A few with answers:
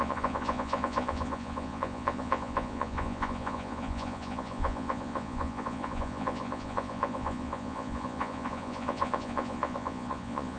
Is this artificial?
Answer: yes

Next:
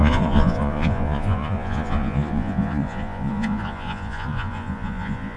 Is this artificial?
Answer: yes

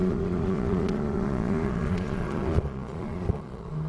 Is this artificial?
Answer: yes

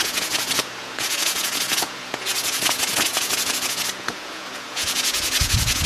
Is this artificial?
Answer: yes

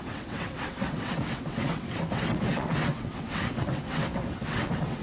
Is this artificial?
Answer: yes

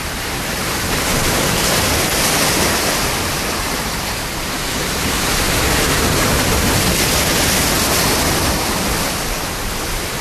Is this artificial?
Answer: no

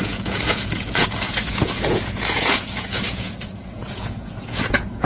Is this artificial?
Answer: yes